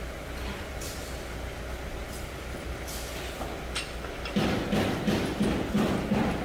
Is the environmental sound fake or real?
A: real